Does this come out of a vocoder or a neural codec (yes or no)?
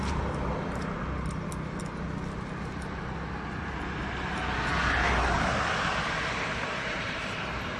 no